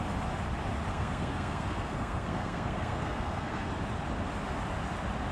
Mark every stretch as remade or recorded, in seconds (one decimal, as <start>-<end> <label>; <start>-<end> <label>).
0.0-0.9 recorded; 0.9-3.7 remade; 3.7-5.3 recorded